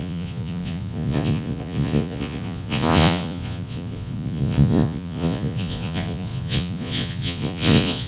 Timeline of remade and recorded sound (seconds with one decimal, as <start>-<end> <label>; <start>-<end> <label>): 0.0-8.1 remade